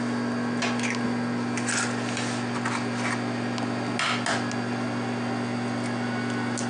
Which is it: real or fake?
real